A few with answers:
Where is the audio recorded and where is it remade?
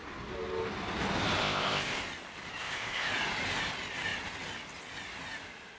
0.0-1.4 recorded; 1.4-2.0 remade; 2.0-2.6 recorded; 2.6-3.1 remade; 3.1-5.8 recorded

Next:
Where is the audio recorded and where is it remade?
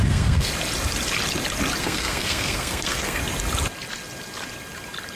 0.0-0.5 remade; 0.5-1.8 recorded; 1.8-3.2 remade; 3.2-5.2 recorded